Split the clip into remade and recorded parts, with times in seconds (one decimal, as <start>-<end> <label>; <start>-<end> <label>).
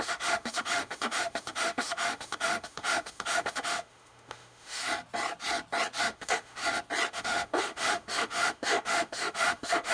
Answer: 0.0-4.8 remade; 4.8-6.0 recorded; 6.0-6.6 remade; 6.6-7.1 recorded; 7.1-9.9 remade